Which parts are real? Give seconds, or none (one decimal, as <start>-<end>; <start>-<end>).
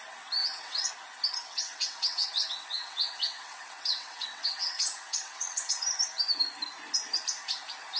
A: 0.0-0.4; 0.9-1.5; 5.8-8.0